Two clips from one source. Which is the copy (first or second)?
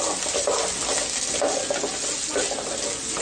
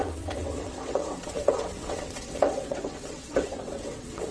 second